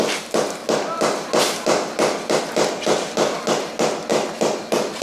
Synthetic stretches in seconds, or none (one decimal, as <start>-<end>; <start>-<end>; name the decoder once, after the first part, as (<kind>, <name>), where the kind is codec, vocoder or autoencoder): none